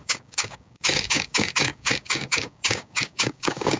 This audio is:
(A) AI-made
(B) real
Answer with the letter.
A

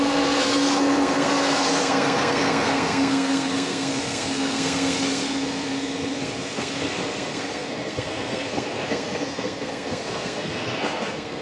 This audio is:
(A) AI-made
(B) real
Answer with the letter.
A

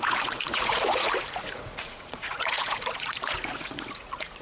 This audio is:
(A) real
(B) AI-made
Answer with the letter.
B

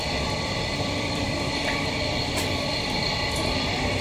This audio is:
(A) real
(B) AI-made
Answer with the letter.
B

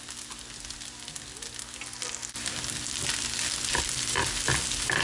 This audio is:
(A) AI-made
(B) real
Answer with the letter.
B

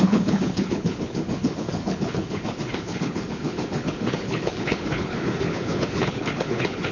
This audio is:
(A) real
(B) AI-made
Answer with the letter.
B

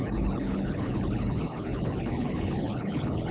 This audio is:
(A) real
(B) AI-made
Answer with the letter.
B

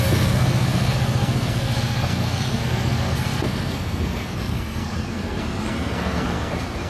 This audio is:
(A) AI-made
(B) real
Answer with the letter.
A